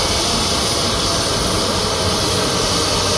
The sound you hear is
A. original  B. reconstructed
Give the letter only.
A